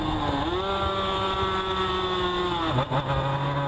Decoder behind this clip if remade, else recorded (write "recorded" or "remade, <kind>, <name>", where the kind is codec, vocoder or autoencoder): recorded